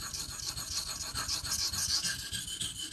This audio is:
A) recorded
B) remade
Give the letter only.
A